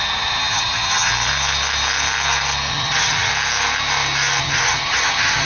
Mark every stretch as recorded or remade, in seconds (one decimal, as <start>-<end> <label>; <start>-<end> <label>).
0.0-1.1 remade; 1.1-2.7 recorded; 2.7-3.3 remade; 3.3-4.4 recorded; 4.4-5.5 remade